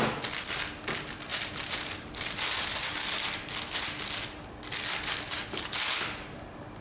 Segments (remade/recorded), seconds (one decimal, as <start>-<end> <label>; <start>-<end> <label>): 0.0-6.8 recorded